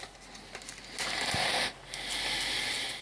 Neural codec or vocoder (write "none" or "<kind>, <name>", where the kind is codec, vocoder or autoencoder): none